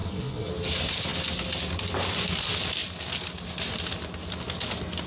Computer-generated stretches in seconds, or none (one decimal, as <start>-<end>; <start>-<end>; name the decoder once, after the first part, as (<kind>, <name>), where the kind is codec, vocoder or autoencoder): 0.0-0.5 (codec, SNAC)